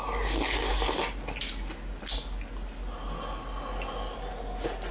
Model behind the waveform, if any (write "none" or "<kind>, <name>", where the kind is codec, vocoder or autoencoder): none